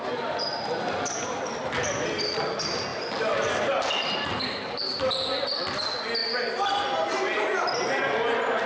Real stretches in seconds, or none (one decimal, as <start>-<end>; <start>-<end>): 0.0-2.9; 5.7-8.7